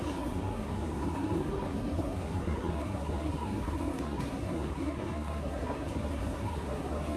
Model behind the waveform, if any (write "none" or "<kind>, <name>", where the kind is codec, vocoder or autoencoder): codec, SNAC